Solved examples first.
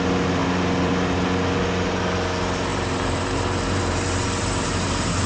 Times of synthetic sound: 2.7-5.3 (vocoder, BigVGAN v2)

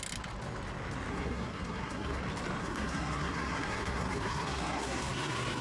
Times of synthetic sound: 1.1-2.2 (codec, SNAC); 2.6-5.6

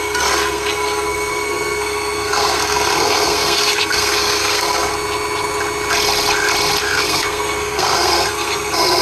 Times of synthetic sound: 0.0-4.9 (codec, SNAC); 6.8-9.0

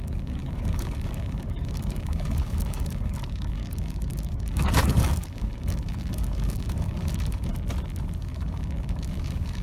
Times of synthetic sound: 0.0-7.5 (codec, DAC); 8.2-9.6

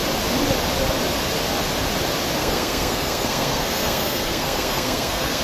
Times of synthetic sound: 2.4-5.4 (codec, SNAC)

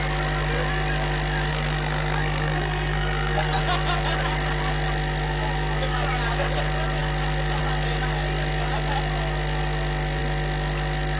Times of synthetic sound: 1.5-3.6 (codec, SNAC)

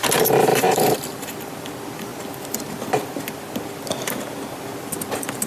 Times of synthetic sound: 0.5-1.3 (vocoder, BigVGAN v2)

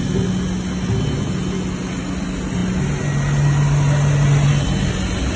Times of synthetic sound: none